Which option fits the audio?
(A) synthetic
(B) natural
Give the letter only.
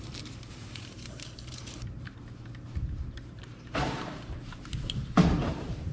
A